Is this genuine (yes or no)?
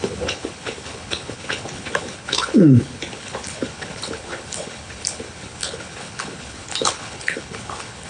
no